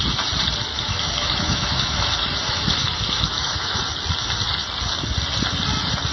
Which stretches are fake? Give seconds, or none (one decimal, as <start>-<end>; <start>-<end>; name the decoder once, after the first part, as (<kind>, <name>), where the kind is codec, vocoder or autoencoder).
0.7-3.8 (autoencoder, DAC-VAE)